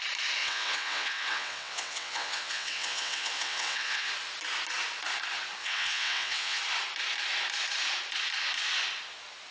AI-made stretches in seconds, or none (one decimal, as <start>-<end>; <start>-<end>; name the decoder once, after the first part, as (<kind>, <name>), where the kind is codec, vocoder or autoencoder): 0.4-4.1 (vocoder, WaveNeXt); 5.6-6.6